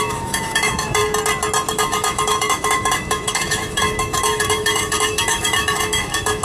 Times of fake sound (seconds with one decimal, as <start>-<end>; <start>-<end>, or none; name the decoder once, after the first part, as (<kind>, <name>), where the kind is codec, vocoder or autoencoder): 0.0-1.0 (autoencoder, DAC-VAE); 1.7-6.4